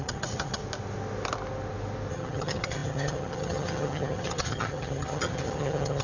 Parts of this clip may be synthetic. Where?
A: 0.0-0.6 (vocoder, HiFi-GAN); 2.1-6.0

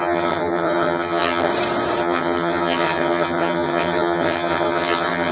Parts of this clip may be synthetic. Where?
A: 0.0-1.5 (vocoder, HiFi-GAN); 2.0-5.3